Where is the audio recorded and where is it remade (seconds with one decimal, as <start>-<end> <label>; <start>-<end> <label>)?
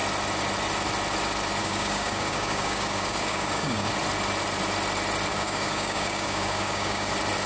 0.0-1.6 recorded; 1.6-3.9 remade; 3.9-5.3 recorded; 5.3-7.1 remade; 7.1-7.5 recorded